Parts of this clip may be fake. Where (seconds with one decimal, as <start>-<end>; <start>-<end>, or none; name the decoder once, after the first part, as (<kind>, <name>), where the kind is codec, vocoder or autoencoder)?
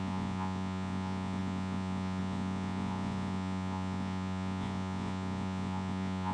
0.0-6.3 (vocoder, Vocos)